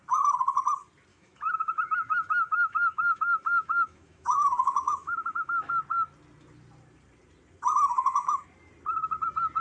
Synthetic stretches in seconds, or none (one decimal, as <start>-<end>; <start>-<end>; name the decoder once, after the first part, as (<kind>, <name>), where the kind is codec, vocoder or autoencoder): 1.1-5.7 (autoencoder, DAC-VAE); 7.9-8.4